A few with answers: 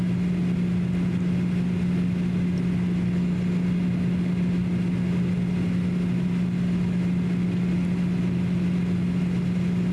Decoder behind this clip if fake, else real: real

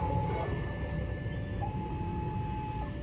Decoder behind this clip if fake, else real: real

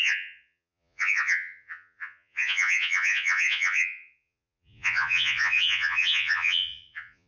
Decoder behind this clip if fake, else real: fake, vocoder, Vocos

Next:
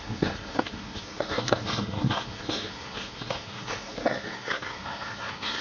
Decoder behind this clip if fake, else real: fake, codec, SNAC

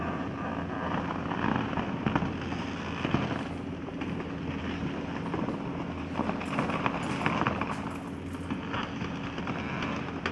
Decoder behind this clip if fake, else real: real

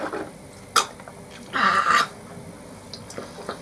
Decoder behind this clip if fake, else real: real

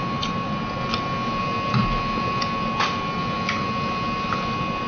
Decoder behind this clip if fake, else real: real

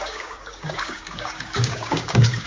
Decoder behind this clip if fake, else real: fake, codec, DAC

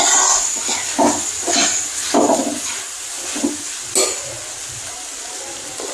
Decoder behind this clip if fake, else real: real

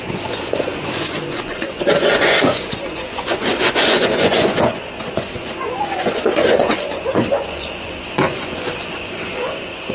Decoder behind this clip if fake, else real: fake, vocoder, Vocos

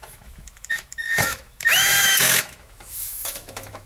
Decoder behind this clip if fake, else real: fake, autoencoder, DAC-VAE